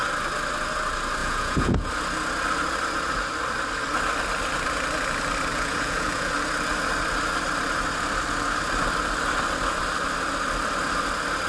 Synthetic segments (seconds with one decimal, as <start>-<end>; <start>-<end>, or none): 1.2-1.9; 5.5-6.3